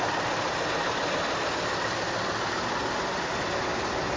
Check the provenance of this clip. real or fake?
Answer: real